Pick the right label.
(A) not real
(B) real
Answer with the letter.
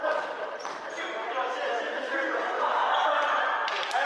B